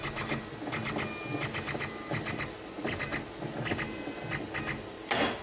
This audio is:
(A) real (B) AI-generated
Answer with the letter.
A